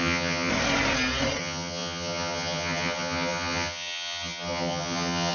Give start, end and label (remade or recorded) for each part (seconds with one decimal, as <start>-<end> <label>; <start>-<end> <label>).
0.0-0.5 remade; 0.5-1.4 recorded; 1.4-5.3 remade